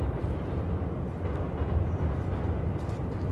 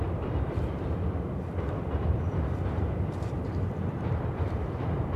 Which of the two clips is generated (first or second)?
second